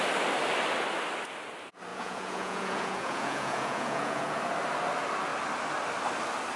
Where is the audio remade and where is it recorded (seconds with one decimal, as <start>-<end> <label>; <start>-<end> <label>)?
0.0-1.9 recorded; 1.9-4.4 remade; 4.4-6.6 recorded